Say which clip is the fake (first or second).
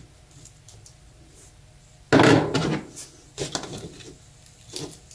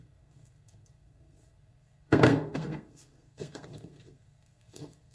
second